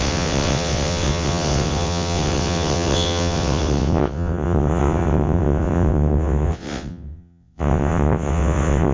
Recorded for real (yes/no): no